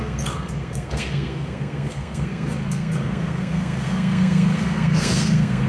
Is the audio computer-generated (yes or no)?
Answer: yes